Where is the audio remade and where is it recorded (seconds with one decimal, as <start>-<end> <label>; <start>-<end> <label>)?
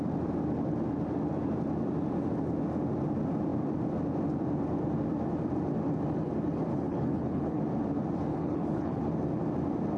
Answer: 0.0-6.7 recorded; 6.7-7.6 remade; 7.6-8.3 recorded; 8.3-9.0 remade; 9.0-10.0 recorded